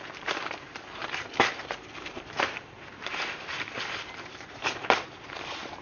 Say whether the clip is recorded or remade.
remade